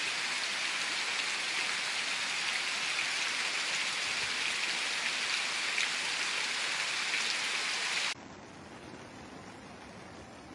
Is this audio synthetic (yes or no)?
no